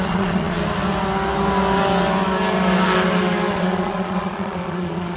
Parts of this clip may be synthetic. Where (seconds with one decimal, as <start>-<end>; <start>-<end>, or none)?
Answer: 0.0-0.6; 3.5-5.2